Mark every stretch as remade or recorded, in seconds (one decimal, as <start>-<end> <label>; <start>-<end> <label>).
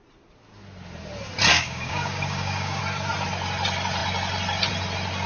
0.0-1.5 recorded; 1.5-2.8 remade; 2.8-5.3 recorded